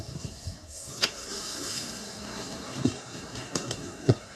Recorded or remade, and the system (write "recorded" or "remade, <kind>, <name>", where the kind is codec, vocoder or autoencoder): remade, codec, SNAC